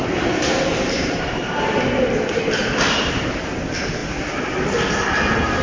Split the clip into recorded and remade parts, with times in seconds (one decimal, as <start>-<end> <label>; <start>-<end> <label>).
0.0-1.9 remade; 1.9-5.6 recorded